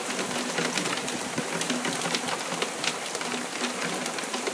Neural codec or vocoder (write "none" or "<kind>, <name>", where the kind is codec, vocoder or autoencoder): none